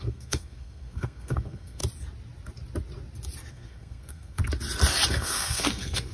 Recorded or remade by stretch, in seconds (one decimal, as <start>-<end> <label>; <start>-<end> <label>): 0.0-1.8 remade; 1.8-3.5 recorded; 3.5-4.4 remade; 4.4-5.1 recorded; 5.1-6.1 remade